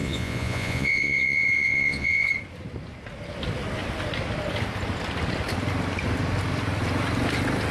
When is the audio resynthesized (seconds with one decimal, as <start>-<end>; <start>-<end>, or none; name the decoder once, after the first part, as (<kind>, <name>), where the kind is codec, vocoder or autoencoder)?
0.0-2.3 (vocoder, Vocos)